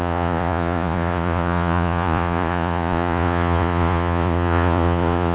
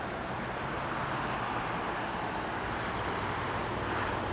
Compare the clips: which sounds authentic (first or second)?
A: second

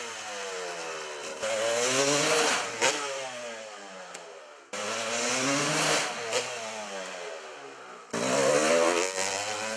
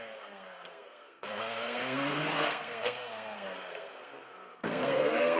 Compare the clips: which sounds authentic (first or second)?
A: first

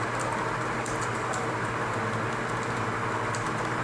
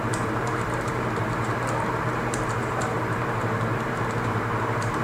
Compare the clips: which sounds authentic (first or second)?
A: first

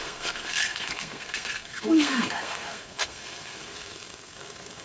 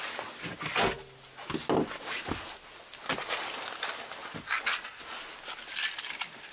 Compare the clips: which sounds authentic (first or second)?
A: second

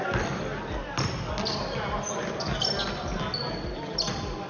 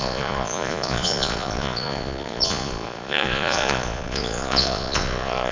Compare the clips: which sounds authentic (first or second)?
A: first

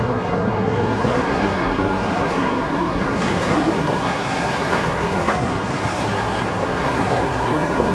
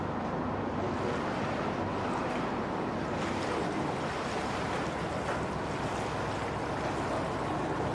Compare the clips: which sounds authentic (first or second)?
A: second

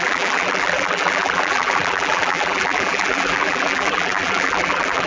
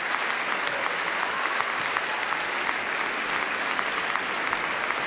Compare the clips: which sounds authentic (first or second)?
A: second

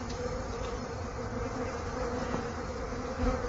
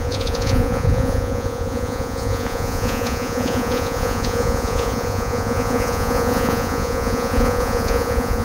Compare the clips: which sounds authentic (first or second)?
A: first